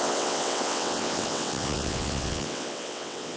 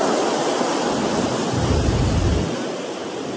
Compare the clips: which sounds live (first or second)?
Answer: second